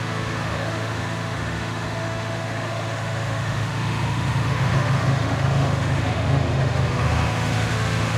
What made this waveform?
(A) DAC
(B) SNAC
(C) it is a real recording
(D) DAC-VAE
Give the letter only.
D